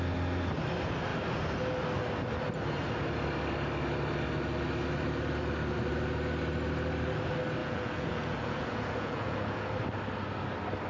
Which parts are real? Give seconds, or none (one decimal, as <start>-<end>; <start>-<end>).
0.0-7.6; 9.7-10.9